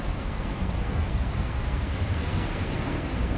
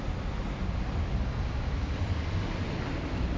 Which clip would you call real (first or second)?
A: second